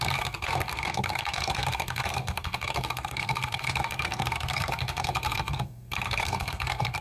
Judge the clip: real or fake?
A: fake